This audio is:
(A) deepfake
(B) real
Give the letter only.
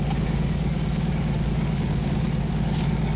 A